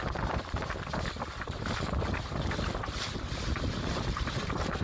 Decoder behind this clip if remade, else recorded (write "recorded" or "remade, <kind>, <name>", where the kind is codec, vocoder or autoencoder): recorded